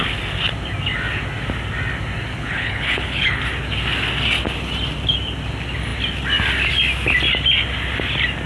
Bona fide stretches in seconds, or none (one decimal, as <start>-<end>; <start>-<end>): 0.0-2.3; 3.4-8.5